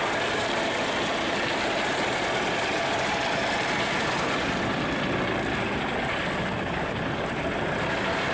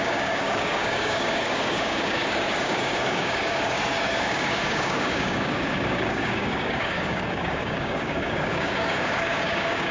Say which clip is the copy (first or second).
second